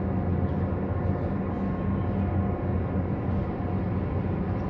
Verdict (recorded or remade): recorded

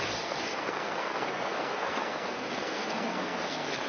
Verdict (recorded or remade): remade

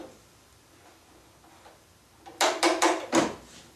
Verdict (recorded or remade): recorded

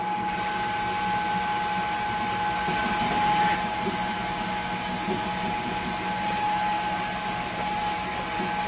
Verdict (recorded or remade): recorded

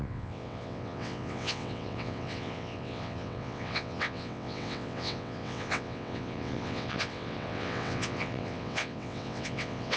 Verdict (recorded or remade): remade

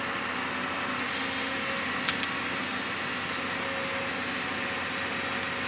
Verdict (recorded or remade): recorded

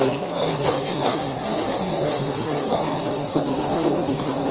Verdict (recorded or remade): remade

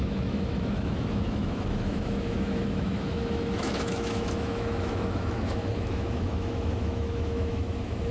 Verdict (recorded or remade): remade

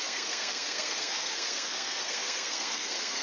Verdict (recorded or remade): remade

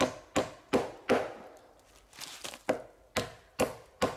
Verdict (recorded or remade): recorded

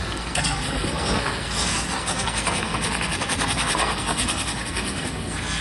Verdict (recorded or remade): remade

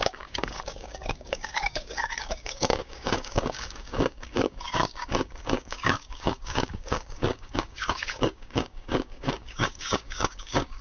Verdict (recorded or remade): remade